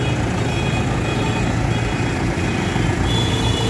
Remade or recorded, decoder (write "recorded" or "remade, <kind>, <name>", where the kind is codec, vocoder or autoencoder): recorded